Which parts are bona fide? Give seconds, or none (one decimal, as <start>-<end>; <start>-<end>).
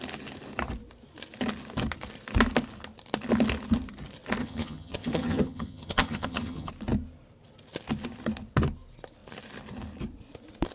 0.0-4.4; 6.7-10.7